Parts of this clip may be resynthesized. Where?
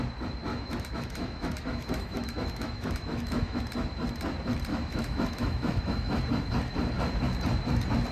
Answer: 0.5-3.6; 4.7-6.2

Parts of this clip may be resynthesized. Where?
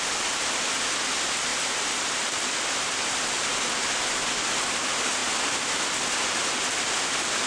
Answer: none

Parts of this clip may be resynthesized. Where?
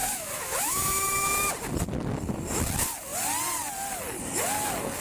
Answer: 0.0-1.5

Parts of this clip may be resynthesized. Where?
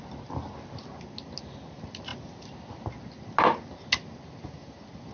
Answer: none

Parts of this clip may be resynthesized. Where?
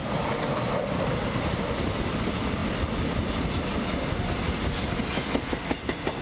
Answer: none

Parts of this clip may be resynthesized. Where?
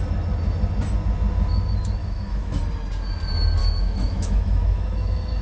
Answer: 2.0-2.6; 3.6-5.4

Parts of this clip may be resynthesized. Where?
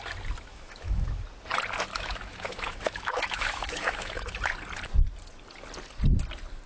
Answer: 0.5-1.2; 1.9-4.5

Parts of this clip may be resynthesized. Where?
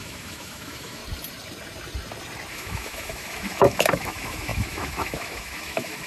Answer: 0.0-1.0; 2.5-6.1